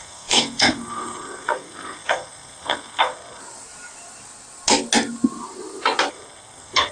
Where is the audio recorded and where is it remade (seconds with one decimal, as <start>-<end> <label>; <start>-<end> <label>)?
0.0-3.4 remade; 3.4-6.1 recorded; 6.1-6.9 remade